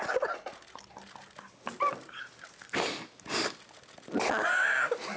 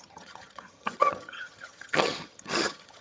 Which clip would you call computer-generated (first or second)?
second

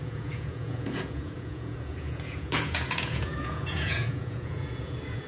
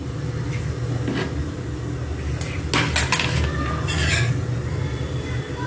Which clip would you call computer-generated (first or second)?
first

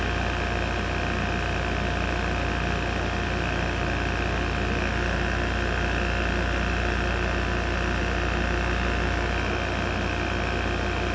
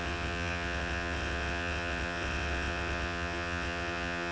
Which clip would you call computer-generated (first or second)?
second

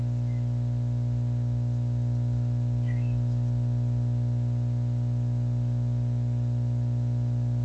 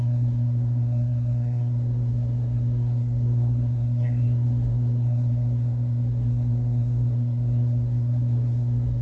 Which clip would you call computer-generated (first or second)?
second